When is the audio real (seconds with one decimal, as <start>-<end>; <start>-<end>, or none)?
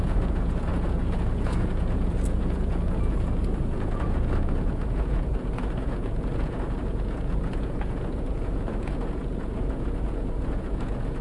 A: none